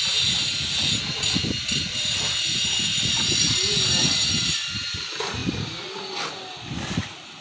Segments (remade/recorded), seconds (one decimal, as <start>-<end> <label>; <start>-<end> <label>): 0.0-7.4 recorded

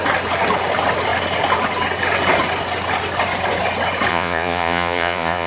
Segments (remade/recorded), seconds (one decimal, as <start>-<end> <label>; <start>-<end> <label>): 0.0-4.1 recorded; 4.1-5.5 remade

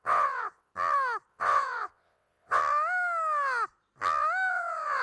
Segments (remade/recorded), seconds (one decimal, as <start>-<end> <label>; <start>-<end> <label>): 0.0-0.7 remade; 0.7-1.3 recorded; 1.3-2.6 remade; 2.6-4.5 recorded; 4.5-5.0 remade

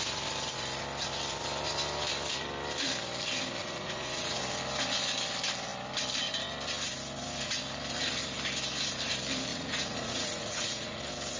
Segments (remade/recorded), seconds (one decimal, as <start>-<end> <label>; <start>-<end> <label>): 0.0-3.6 recorded; 3.6-4.4 remade; 4.4-9.5 recorded; 9.5-11.0 remade; 11.0-11.4 recorded

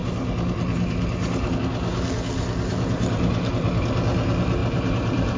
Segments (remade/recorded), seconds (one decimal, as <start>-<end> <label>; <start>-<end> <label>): 0.0-2.7 recorded; 2.7-3.5 remade; 3.5-4.6 recorded; 4.6-5.4 remade

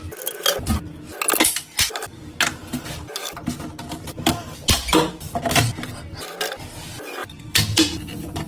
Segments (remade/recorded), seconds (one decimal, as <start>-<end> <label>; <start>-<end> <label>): 0.0-8.5 recorded

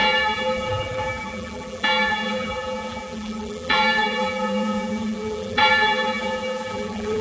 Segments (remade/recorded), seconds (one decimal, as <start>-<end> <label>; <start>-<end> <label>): 0.0-7.2 remade

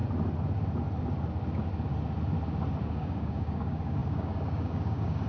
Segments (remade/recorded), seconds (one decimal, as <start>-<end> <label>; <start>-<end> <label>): 0.0-2.8 recorded; 2.8-5.3 remade